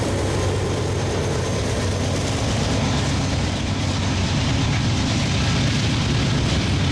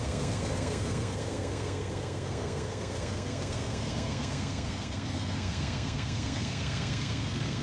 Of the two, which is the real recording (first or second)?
first